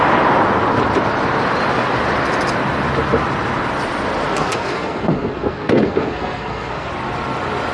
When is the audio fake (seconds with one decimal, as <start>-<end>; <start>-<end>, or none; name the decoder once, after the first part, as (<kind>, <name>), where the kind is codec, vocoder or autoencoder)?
4.3-6.9 (codec, SNAC)